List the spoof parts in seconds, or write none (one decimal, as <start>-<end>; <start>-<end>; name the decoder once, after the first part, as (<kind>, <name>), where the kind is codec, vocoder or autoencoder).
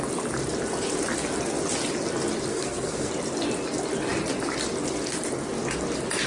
2.5-3.1 (codec, SNAC)